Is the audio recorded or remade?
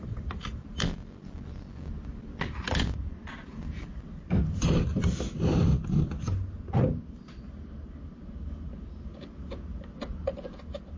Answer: recorded